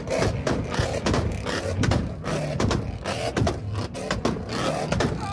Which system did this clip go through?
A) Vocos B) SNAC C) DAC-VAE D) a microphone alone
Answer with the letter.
D